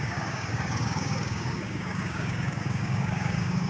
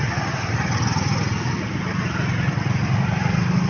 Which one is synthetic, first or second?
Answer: first